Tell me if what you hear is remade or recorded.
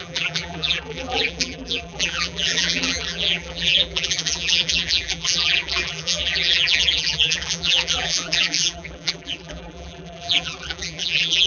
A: remade